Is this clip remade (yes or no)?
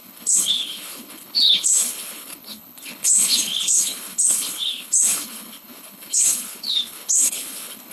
yes